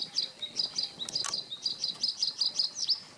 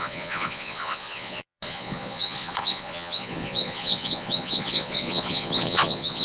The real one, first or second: first